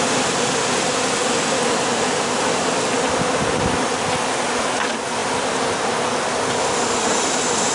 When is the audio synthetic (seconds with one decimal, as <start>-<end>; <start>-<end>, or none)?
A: none